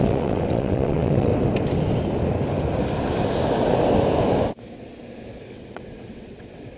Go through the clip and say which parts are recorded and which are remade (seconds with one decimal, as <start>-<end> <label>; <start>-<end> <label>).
0.0-1.3 remade; 1.3-5.4 recorded; 5.4-6.8 remade